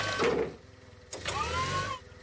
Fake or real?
real